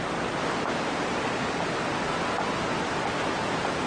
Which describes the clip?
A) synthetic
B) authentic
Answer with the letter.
B